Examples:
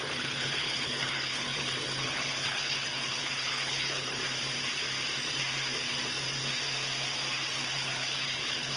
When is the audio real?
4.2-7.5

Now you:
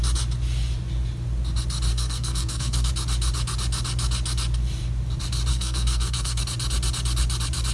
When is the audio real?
0.0-1.9; 2.9-5.5; 6.4-7.7

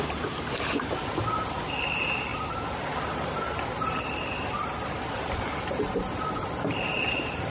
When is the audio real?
0.0-7.5

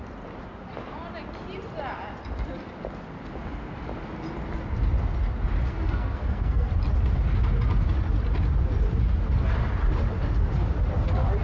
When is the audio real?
0.0-5.7; 6.7-11.4